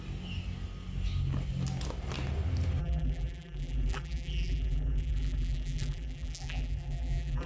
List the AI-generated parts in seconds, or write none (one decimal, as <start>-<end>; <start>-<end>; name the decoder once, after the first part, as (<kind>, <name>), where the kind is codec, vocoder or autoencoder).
2.8-7.5 (vocoder, BigVGAN v2)